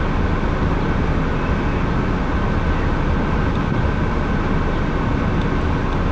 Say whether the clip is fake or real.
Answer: real